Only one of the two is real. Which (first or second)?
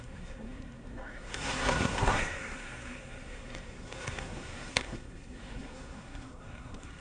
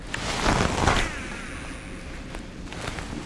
second